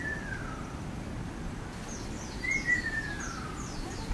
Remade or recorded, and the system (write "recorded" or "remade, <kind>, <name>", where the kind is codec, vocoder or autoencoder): recorded